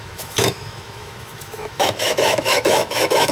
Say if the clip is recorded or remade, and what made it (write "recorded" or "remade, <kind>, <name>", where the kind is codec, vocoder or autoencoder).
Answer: remade, autoencoder, DAC-VAE